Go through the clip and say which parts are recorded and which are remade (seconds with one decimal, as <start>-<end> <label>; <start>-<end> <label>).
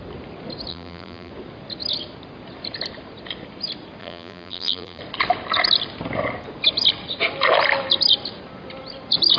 0.0-0.7 recorded; 0.7-1.3 remade; 1.3-4.0 recorded; 4.0-5.0 remade; 5.0-9.4 recorded